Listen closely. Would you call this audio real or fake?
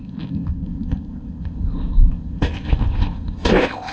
fake